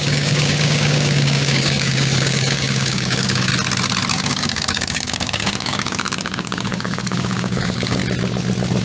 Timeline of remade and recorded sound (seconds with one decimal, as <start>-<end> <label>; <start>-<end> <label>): 0.0-3.5 remade; 3.5-4.1 recorded; 4.1-8.0 remade; 8.0-8.8 recorded